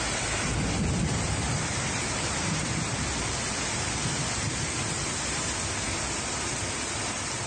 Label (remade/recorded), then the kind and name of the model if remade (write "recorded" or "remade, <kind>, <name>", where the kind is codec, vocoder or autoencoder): recorded